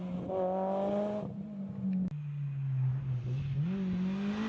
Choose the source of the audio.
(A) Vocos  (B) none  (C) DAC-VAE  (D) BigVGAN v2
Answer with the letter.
B